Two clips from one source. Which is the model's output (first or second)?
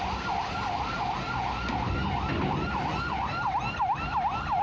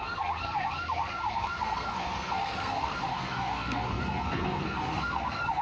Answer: second